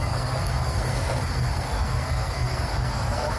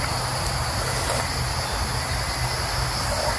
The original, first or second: second